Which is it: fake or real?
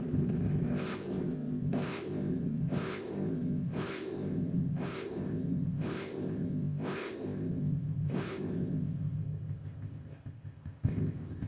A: fake